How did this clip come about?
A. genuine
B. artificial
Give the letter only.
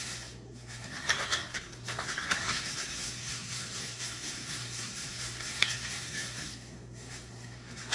B